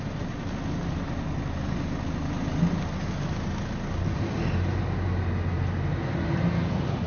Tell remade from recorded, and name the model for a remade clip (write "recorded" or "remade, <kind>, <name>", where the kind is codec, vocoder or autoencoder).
recorded